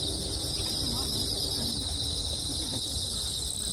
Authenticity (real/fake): real